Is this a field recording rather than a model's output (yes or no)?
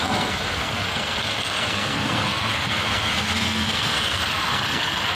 no